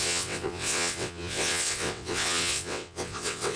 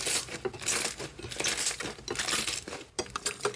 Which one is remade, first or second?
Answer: first